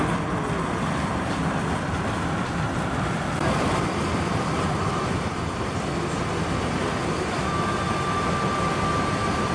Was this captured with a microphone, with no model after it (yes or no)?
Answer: yes